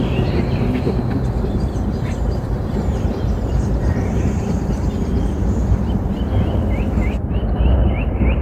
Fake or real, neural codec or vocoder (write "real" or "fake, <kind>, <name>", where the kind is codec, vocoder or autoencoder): fake, vocoder, BigVGAN v2